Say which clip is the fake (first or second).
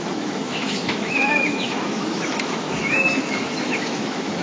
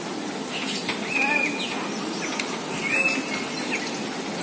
first